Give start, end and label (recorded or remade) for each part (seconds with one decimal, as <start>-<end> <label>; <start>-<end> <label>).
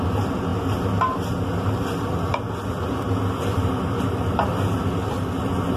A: 0.0-5.8 recorded